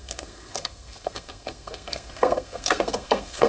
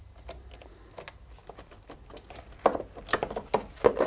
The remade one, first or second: first